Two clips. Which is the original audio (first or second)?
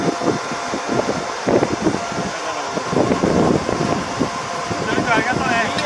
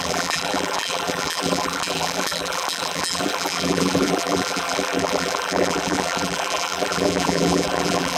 first